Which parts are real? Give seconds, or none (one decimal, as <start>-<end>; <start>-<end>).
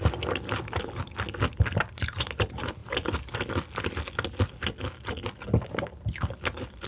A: 0.0-6.9